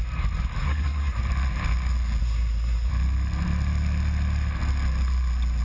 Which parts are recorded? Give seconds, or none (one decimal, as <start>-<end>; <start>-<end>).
0.0-0.6; 1.2-2.2; 2.9-5.6